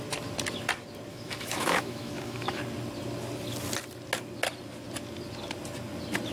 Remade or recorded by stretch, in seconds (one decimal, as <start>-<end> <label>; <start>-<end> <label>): 0.0-1.1 recorded; 1.1-2.6 remade; 2.6-6.3 recorded